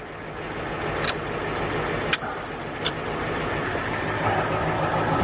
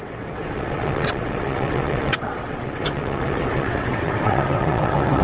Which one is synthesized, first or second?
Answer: second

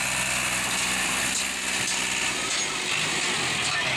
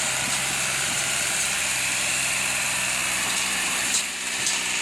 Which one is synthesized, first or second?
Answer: second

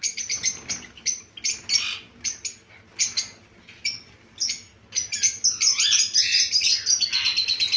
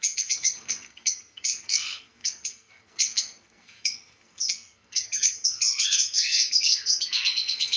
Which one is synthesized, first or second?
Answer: second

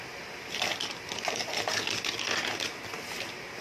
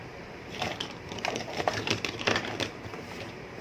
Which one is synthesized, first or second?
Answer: second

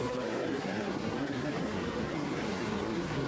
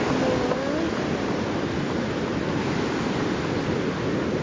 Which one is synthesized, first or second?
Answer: first